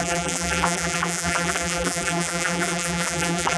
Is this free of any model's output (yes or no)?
no